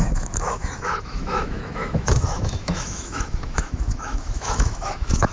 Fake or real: fake